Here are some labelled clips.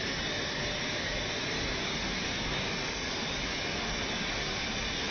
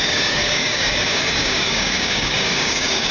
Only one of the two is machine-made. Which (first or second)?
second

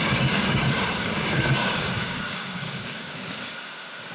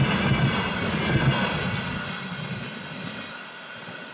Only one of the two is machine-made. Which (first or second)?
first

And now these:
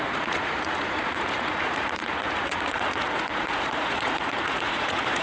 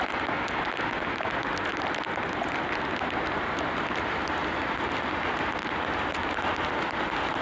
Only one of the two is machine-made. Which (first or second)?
first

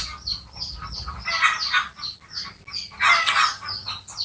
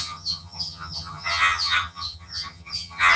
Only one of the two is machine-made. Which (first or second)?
second